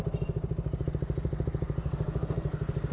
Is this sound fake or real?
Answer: real